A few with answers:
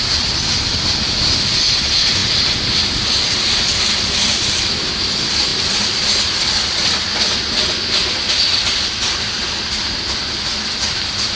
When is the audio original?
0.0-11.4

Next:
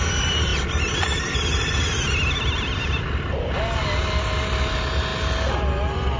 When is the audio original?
0.0-6.2

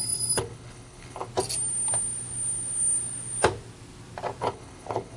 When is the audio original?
1.3-4.4

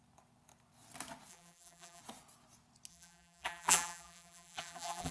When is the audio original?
0.0-1.3; 2.0-2.9

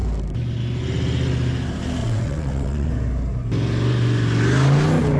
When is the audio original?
0.0-2.0; 2.9-5.2